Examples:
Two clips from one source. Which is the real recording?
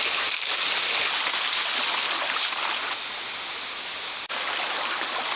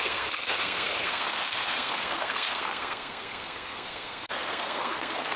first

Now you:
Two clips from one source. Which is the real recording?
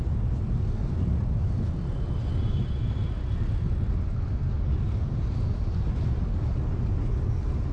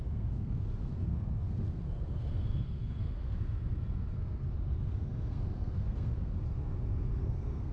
first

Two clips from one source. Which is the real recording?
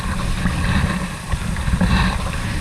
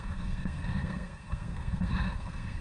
first